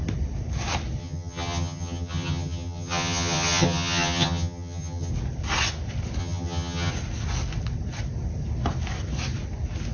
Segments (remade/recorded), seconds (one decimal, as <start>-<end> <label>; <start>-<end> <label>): 0.0-1.0 recorded; 1.0-5.1 remade; 5.1-6.2 recorded; 6.2-6.9 remade; 6.9-9.9 recorded